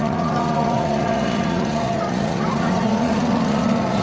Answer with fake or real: fake